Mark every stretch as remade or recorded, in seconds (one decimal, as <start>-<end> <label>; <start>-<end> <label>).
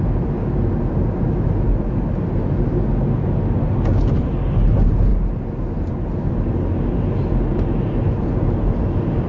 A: 0.0-9.3 recorded